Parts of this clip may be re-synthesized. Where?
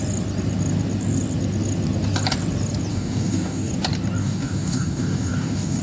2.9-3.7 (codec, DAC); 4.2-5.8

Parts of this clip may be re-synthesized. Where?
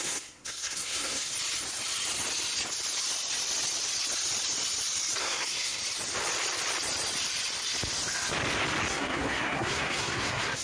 0.0-1.3 (codec, SNAC); 5.2-5.8; 8.9-10.6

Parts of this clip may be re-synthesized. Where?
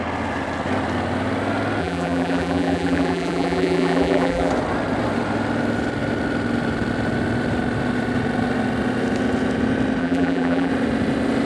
1.8-4.5 (vocoder, BigVGAN v2); 10.0-10.7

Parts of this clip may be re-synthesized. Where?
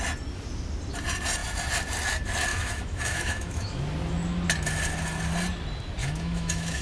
2.5-3.8 (autoencoder, DAC-VAE); 6.0-6.8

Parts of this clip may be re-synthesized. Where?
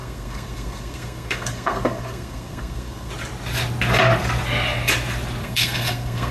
0.0-3.1 (codec, SNAC); 5.4-6.3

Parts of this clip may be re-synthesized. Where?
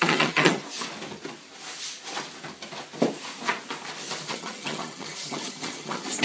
0.0-0.6 (vocoder, HiFi-GAN); 4.3-6.2